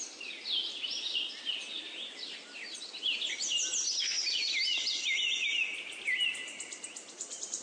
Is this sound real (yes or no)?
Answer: yes